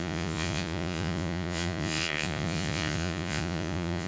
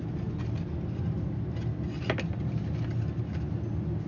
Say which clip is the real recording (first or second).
second